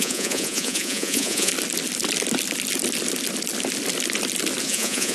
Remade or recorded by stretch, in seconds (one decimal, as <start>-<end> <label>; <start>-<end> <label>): 0.0-1.5 remade; 1.5-4.6 recorded; 4.6-5.1 remade